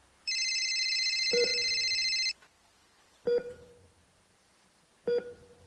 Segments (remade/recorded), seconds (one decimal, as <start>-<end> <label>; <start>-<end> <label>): 0.0-1.5 remade; 1.5-3.0 recorded; 3.0-5.7 remade